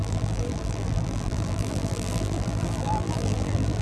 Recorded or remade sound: remade